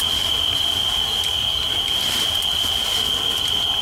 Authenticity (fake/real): real